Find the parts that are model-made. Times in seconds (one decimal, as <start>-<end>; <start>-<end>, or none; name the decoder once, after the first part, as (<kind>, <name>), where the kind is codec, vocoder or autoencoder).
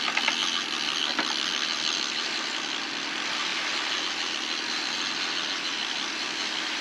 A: none